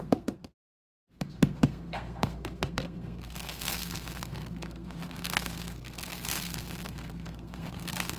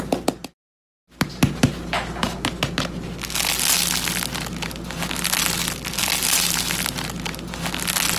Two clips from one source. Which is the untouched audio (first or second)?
second